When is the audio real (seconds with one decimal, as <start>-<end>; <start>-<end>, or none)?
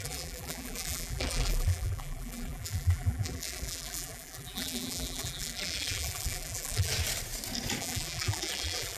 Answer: 6.9-7.8